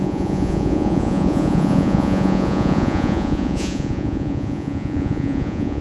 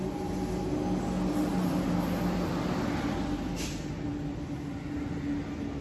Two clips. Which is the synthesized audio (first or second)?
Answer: first